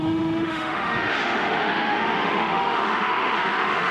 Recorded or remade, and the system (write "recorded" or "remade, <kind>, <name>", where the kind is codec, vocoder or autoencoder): remade, autoencoder, DAC-VAE